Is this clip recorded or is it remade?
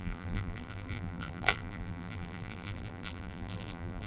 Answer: remade